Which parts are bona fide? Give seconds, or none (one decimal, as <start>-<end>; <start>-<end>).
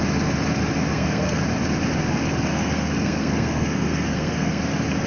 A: 0.0-0.9; 1.4-2.5; 4.6-5.1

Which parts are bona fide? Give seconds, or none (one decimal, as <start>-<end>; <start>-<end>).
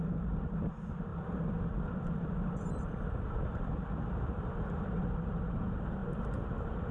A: 0.0-1.1; 5.2-6.9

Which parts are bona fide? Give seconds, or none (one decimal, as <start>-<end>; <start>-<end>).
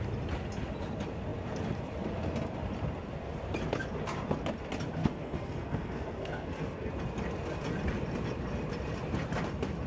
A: 0.0-5.0; 6.9-9.9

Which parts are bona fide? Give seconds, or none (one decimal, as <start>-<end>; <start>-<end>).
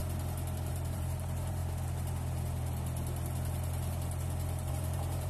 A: 0.0-0.7; 1.6-4.7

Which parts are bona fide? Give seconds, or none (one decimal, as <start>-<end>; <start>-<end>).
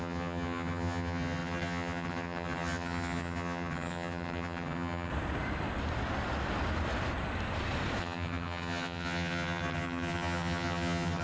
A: 5.1-8.0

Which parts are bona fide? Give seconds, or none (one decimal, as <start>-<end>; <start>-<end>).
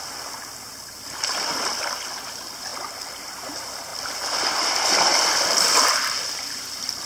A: 0.0-7.1